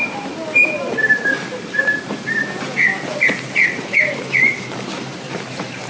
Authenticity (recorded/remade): remade